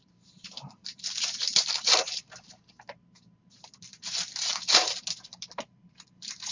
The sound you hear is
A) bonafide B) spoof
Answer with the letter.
B